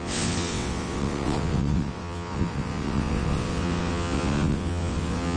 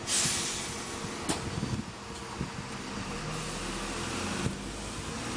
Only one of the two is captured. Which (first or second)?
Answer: second